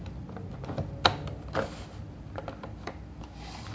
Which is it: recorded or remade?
recorded